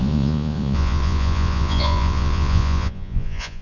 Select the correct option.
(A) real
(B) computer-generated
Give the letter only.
B